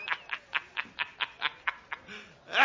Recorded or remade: recorded